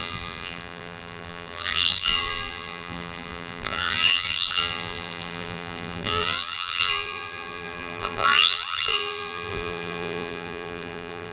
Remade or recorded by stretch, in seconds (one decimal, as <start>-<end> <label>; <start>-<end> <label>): 0.0-11.3 remade